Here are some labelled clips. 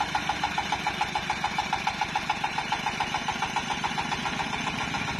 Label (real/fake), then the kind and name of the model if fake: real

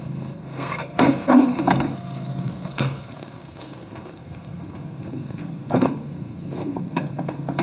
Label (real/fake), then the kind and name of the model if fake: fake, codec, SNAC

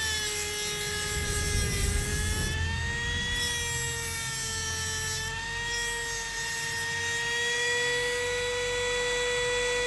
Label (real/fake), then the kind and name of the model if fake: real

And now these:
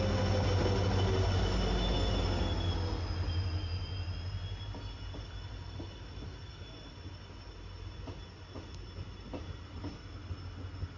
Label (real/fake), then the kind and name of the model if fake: real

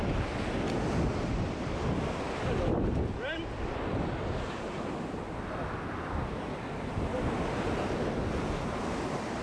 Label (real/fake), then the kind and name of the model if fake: real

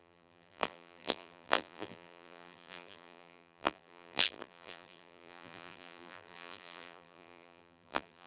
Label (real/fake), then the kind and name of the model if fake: fake, vocoder, BigVGAN v2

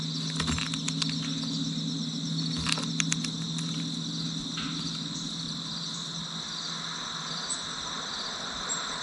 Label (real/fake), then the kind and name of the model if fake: real